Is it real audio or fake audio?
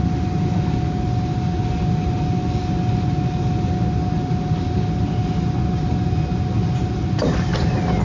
real